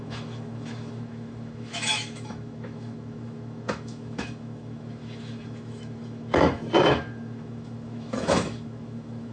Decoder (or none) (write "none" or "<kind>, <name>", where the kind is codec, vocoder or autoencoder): autoencoder, DAC-VAE